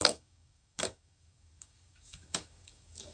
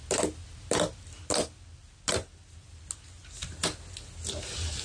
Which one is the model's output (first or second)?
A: first